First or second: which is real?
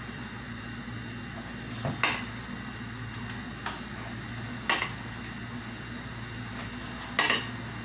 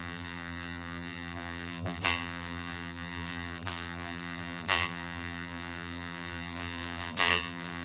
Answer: first